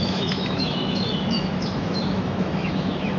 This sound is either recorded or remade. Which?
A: remade